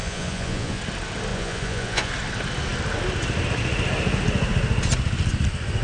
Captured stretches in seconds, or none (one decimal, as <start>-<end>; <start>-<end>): 0.8-1.3; 2.1-5.8

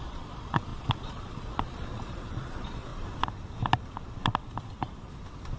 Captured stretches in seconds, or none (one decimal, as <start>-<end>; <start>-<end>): 2.9-5.6

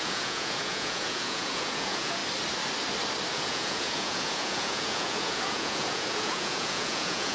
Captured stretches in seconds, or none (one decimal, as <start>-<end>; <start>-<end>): 2.2-3.3

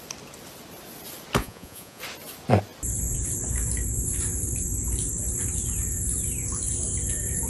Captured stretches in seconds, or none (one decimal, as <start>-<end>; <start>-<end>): 0.0-1.4; 2.0-7.5